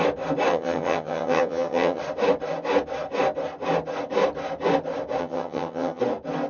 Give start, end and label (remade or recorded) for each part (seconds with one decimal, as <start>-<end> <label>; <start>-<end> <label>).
0.0-0.5 recorded; 0.5-2.0 remade; 2.0-5.2 recorded; 5.2-6.0 remade; 6.0-6.5 recorded